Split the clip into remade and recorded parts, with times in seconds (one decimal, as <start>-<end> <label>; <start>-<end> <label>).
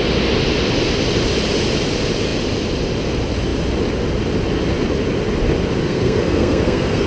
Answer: 0.0-5.8 recorded; 5.8-7.1 remade